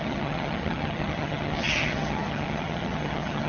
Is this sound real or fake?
fake